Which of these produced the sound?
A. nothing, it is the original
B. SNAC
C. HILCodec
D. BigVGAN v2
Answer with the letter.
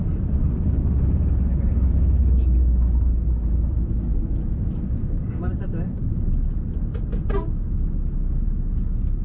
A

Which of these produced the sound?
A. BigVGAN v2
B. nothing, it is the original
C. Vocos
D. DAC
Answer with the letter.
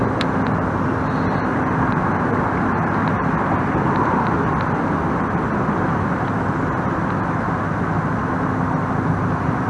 B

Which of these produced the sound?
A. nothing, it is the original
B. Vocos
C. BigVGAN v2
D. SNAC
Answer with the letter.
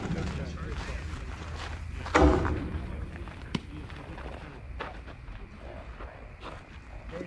A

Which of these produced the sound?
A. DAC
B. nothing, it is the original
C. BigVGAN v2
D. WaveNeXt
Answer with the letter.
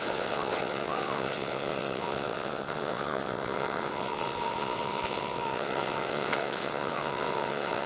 D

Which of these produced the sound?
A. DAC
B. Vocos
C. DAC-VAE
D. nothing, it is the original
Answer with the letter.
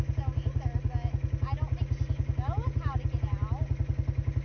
D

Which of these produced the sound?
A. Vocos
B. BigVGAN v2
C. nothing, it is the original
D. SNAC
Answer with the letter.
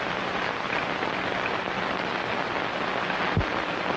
C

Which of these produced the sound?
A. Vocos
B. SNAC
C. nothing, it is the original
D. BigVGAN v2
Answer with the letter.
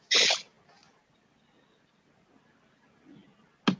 C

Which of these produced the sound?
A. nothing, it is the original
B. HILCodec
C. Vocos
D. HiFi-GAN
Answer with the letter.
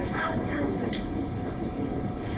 B